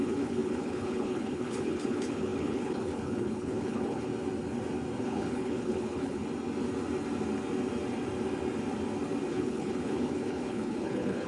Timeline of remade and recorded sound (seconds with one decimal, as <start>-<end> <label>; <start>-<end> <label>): 0.0-4.1 remade; 4.1-5.0 recorded; 5.0-6.2 remade; 6.2-9.3 recorded; 9.3-11.3 remade